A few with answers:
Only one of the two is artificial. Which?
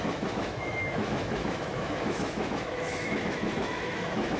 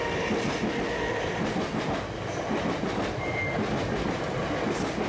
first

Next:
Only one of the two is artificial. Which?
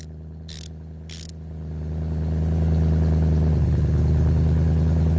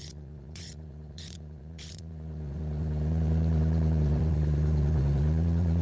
second